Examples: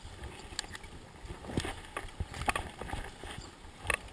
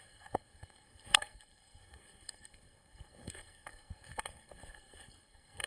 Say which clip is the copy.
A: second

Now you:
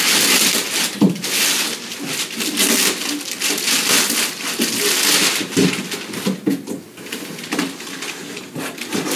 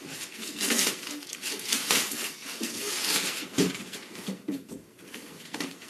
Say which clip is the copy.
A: second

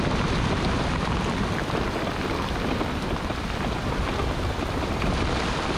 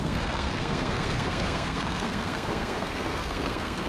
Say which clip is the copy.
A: second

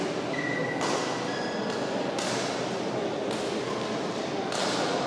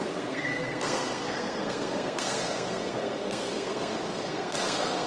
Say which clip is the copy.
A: second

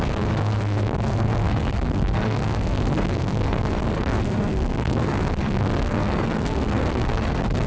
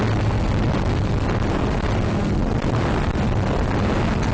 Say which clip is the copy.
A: first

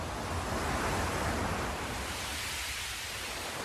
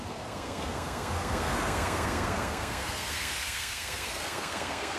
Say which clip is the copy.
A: second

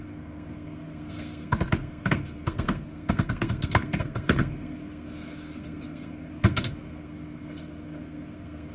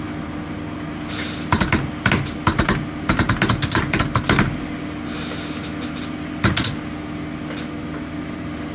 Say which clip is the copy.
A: first